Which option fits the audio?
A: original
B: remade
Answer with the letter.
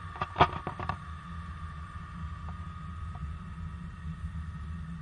A